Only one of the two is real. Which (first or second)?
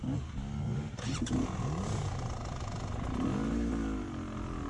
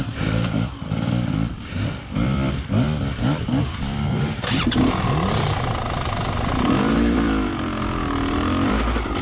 first